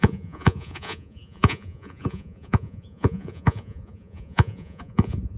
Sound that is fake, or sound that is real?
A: fake